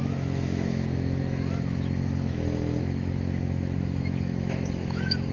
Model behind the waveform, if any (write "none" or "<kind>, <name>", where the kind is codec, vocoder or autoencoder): autoencoder, DAC-VAE